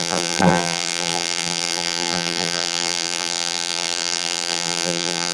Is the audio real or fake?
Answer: fake